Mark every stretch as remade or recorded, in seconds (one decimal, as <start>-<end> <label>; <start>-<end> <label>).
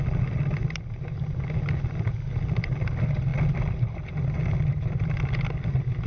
0.0-6.1 recorded